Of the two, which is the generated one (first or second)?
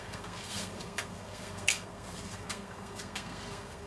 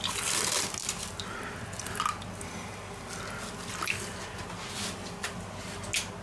first